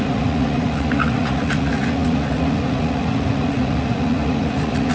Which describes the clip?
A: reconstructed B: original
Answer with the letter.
A